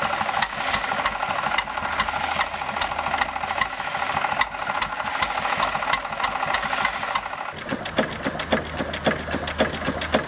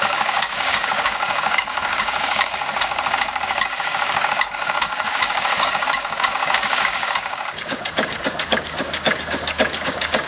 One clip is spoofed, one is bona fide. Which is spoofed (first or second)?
second